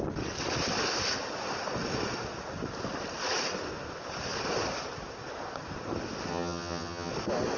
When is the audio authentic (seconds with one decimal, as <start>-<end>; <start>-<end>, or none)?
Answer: 0.0-6.3; 7.1-7.6